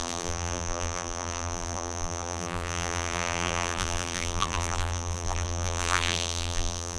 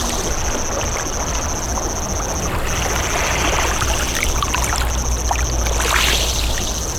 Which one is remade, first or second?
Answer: first